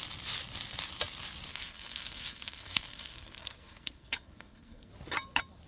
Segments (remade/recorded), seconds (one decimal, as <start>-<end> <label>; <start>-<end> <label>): 0.0-1.5 recorded; 1.5-4.9 remade; 4.9-5.7 recorded